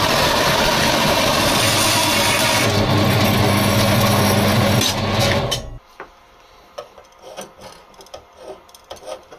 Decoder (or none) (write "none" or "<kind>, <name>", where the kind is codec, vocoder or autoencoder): none